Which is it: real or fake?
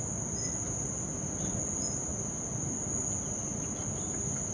real